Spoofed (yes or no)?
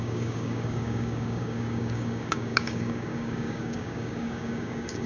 yes